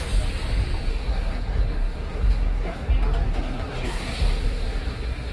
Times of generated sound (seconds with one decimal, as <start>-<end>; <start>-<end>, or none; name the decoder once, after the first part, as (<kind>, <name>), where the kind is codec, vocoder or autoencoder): 0.9-2.9 (codec, SNAC); 3.3-5.3